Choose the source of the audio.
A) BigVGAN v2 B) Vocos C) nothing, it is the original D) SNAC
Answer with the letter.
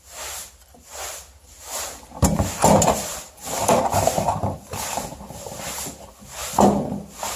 C